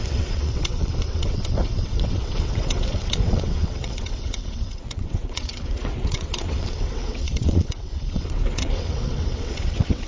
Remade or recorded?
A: remade